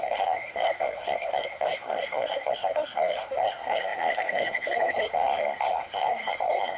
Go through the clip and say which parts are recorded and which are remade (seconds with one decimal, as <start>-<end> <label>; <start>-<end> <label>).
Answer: 0.0-6.8 remade